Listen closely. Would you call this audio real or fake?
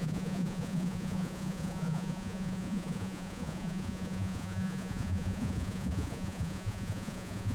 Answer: fake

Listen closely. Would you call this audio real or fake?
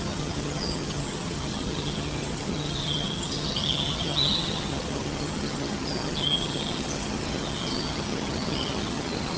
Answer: fake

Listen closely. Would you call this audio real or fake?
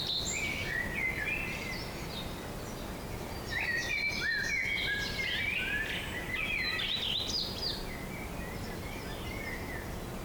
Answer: real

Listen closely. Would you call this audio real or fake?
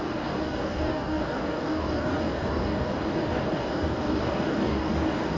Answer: fake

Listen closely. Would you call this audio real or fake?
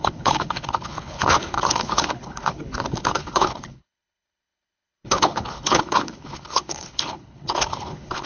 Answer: fake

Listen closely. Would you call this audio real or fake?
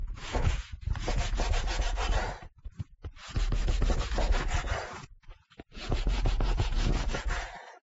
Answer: fake